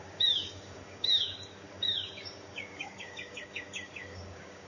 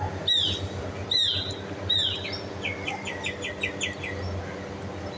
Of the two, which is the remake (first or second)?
first